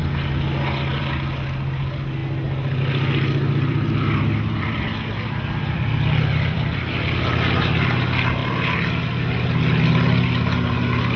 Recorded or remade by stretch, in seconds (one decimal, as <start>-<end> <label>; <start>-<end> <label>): 0.0-3.4 recorded; 3.4-7.0 remade; 7.0-11.2 recorded